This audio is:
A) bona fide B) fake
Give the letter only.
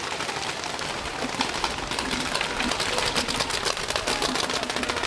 A